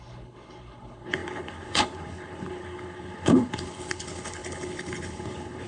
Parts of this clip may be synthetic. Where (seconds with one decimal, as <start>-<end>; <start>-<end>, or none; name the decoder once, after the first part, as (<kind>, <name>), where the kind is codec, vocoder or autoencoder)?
0.0-5.7 (codec, HILCodec)